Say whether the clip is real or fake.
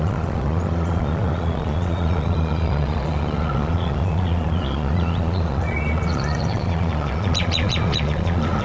fake